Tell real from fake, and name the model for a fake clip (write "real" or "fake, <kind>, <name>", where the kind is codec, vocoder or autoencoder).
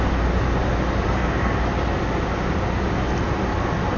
real